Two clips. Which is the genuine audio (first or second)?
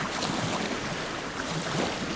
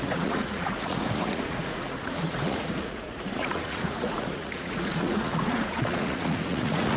first